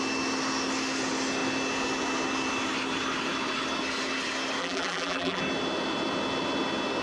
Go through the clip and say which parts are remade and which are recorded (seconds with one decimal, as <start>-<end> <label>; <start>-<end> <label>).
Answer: 0.0-4.6 recorded; 4.6-5.4 remade; 5.4-7.0 recorded